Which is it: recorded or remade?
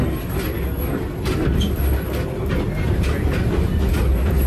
recorded